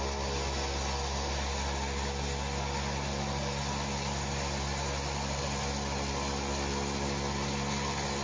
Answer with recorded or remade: recorded